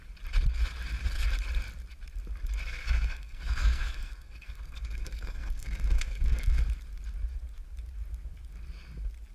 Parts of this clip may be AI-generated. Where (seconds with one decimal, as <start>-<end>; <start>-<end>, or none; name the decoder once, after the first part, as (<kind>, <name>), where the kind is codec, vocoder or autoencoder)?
2.6-6.6 (codec, SNAC)